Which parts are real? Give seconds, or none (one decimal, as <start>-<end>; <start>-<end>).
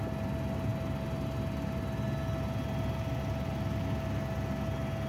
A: 0.0-5.1